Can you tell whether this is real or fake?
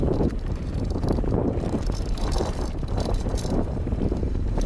fake